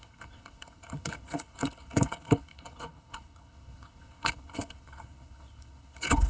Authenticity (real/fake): fake